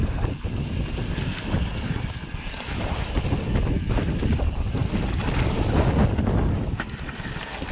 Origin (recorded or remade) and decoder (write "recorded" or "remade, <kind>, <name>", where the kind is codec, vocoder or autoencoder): recorded